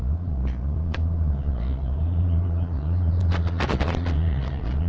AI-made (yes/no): yes